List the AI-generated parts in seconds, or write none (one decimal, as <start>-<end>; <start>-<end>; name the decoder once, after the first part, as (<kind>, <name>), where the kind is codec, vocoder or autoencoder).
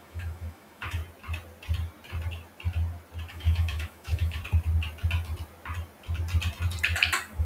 0.0-1.0 (autoencoder, DAC-VAE); 3.3-4.4